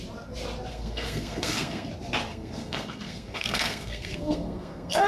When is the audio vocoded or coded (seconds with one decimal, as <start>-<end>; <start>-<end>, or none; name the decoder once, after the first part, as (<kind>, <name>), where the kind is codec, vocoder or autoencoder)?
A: 0.7-1.9 (codec, SNAC); 2.3-5.1